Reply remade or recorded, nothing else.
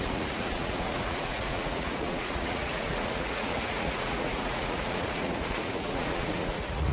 remade